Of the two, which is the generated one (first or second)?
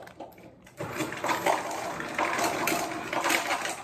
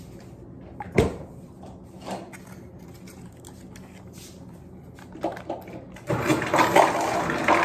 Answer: first